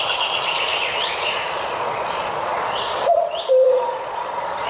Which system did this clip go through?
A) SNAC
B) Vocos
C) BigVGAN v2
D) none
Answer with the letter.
B